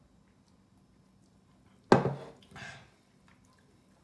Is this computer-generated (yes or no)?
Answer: no